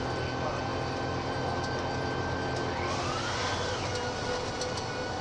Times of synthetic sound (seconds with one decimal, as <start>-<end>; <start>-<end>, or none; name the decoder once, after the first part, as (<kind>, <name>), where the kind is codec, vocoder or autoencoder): none

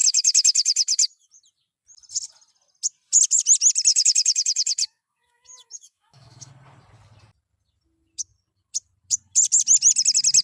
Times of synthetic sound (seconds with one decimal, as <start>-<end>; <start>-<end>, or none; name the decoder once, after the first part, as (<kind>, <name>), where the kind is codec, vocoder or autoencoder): 0.0-1.3 (autoencoder, DAC-VAE); 3.9-6.5

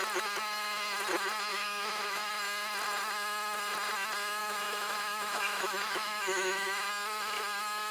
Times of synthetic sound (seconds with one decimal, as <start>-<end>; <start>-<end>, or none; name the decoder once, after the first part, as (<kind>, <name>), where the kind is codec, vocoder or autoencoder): 1.5-2.3 (autoencoder, DAC-VAE); 4.4-6.9